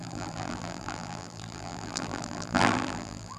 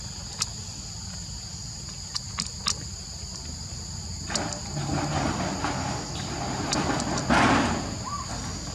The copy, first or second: first